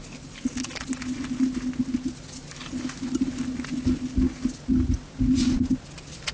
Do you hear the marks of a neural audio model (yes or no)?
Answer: no